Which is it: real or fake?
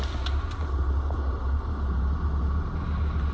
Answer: real